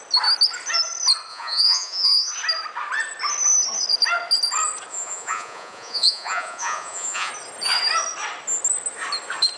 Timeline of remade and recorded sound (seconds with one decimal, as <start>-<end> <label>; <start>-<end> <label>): 0.0-1.3 recorded; 1.3-2.3 remade; 2.3-4.9 recorded; 4.9-7.3 remade; 7.3-9.6 recorded